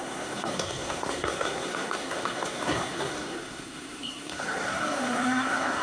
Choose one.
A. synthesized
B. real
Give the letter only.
A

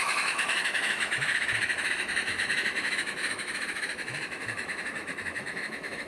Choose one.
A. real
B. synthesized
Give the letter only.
B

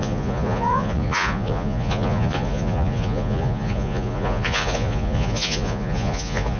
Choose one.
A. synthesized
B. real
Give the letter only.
A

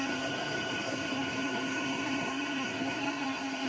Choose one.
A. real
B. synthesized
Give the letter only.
B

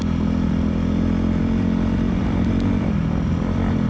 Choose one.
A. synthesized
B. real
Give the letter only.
A